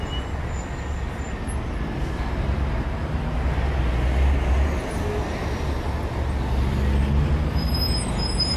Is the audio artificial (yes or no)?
no